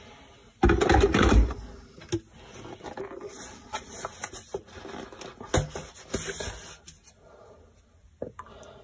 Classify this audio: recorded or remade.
recorded